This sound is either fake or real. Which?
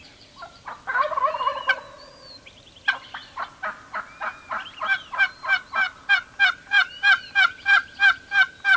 fake